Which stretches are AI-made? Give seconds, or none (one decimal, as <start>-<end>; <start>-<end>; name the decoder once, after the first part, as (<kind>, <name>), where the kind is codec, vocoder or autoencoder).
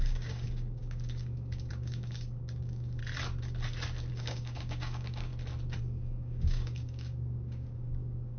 0.0-3.0 (codec, DAC); 4.1-5.3; 5.8-8.4